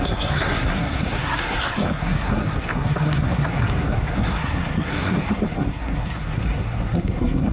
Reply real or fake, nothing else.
fake